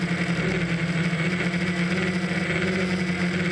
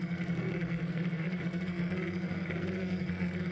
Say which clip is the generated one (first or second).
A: second